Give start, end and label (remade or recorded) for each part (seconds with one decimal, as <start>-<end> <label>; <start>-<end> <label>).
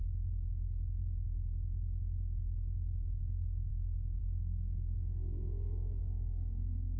0.0-3.2 recorded; 3.2-7.0 remade